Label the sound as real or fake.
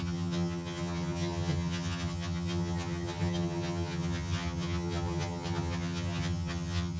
fake